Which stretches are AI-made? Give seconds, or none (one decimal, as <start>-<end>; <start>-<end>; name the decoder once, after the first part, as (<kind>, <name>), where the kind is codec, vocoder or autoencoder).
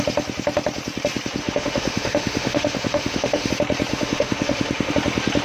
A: 1.4-3.5 (autoencoder, DAC-VAE); 3.9-4.9